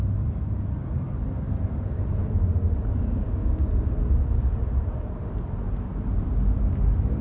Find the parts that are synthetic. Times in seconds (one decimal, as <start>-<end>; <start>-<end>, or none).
none